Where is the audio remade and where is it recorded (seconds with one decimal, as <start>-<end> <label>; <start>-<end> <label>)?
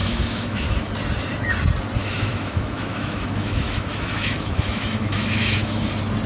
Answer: 0.0-0.9 remade; 0.9-2.0 recorded; 2.0-5.8 remade; 5.8-6.3 recorded